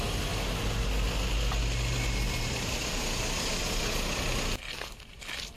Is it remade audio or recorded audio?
recorded